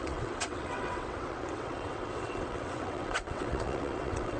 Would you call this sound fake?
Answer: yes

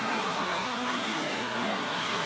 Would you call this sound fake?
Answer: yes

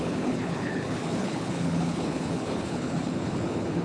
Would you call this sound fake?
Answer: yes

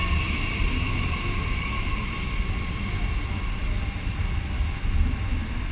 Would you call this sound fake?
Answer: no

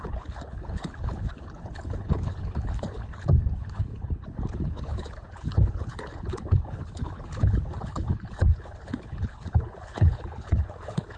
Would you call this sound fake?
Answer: yes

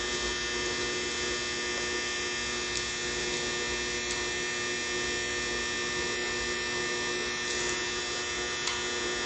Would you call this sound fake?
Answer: no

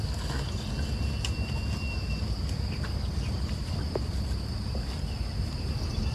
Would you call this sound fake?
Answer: no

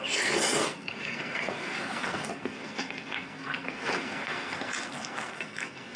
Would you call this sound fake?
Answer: yes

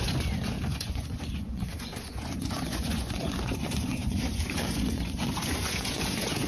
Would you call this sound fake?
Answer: yes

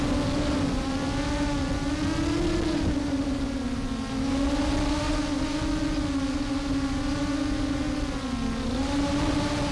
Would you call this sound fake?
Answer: no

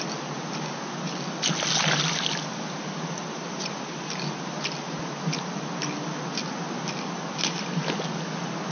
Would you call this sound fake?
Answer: no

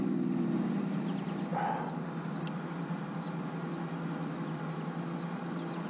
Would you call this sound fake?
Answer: no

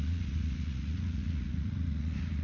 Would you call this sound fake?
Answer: yes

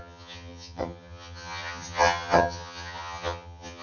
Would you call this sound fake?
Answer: yes